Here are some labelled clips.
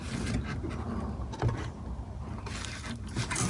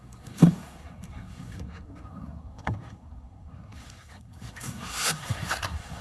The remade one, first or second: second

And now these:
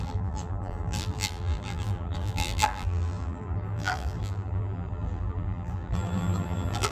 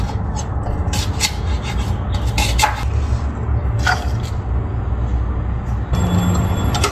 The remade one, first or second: first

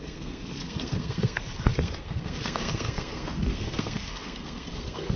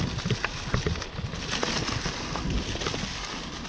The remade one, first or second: first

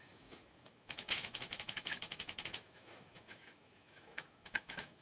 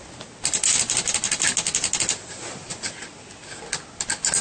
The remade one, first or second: first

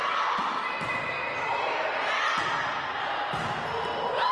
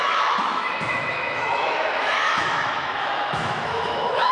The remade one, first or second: second